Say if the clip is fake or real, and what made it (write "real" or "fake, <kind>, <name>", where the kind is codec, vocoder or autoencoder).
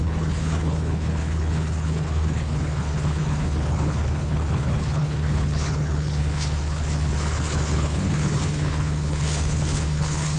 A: fake, codec, HILCodec